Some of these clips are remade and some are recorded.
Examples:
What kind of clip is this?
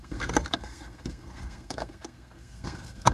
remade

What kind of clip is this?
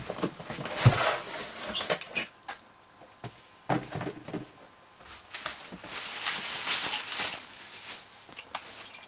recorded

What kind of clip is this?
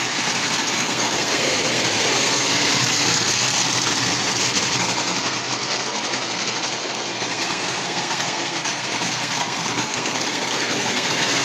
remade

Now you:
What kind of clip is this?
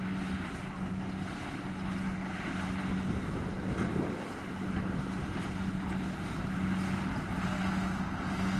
recorded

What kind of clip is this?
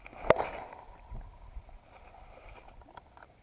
recorded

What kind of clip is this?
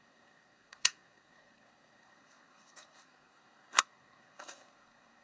remade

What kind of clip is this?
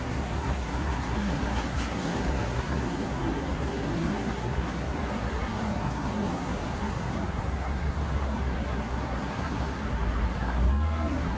remade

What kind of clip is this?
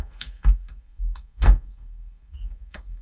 remade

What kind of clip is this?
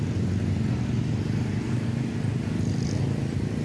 recorded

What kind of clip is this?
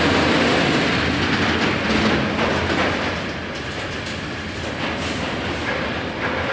recorded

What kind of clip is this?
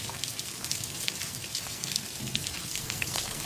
remade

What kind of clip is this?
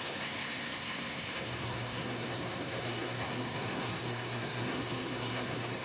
remade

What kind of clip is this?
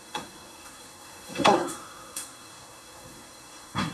remade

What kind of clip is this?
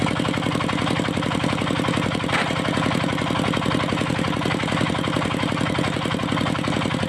recorded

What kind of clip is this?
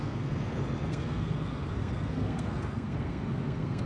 remade